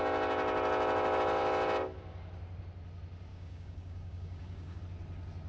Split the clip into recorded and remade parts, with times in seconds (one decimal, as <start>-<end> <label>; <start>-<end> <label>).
0.0-3.3 recorded; 3.3-4.8 remade; 4.8-5.5 recorded